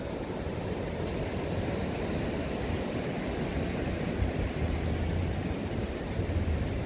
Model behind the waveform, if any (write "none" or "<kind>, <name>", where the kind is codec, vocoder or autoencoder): none